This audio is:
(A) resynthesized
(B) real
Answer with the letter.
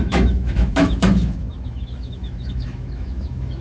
A